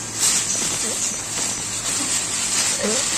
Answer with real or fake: real